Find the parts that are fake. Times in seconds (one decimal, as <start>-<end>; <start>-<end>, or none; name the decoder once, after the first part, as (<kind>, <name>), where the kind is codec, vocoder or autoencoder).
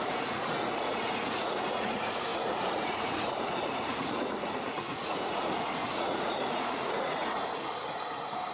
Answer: 0.0-8.5 (vocoder, Vocos)